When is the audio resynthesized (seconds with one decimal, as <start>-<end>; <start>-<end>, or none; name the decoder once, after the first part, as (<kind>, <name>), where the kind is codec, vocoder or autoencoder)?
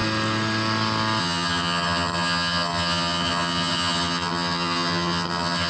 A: 1.2-5.7 (vocoder, HiFi-GAN)